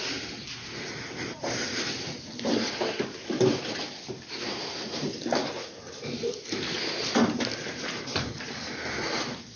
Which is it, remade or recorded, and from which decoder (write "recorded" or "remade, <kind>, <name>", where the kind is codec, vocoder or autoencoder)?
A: recorded